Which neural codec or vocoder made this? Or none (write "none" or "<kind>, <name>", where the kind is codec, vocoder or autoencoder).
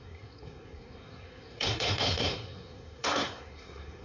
codec, SNAC